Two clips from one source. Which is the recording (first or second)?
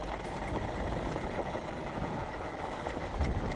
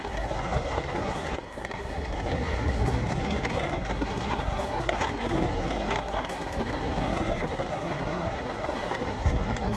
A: first